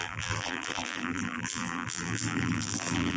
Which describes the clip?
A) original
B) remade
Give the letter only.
B